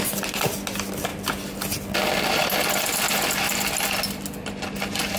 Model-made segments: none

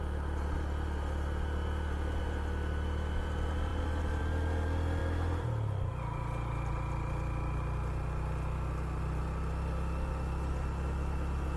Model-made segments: none

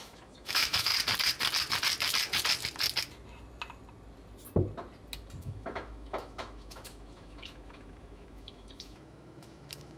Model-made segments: 0.0-0.9 (autoencoder, DAC-VAE); 5.4-10.0

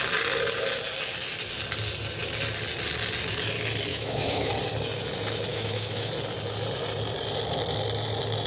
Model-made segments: 3.9-4.5 (autoencoder, DAC-VAE); 5.5-6.1